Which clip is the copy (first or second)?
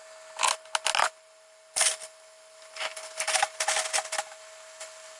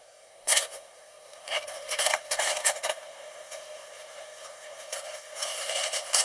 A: second